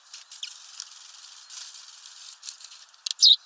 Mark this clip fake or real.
real